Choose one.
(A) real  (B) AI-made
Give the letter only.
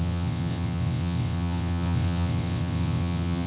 B